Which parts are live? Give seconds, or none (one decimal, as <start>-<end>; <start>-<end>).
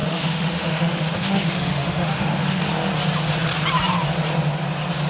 2.6-5.1